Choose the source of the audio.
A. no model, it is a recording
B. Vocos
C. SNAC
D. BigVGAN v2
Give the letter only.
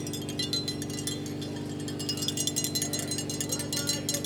A